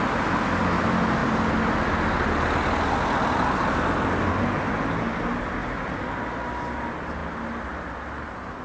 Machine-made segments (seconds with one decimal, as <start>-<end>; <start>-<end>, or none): none